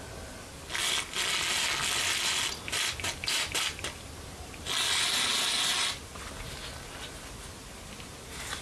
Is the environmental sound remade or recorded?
recorded